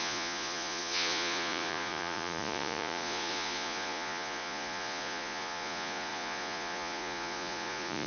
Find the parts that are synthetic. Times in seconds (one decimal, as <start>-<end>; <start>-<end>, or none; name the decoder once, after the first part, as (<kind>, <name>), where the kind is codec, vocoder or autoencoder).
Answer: 0.0-8.1 (vocoder, Vocos)